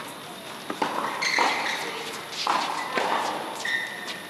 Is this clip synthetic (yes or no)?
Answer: no